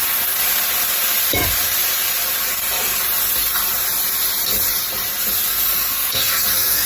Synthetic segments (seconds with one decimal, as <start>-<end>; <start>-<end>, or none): 5.5-6.9